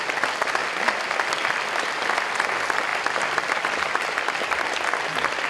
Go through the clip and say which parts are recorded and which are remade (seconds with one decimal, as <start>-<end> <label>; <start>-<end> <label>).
0.0-5.5 recorded